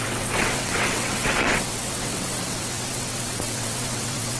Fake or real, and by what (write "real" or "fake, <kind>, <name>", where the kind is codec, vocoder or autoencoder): fake, vocoder, WaveNeXt